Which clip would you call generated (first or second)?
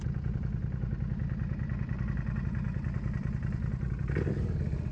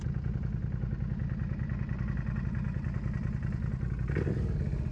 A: first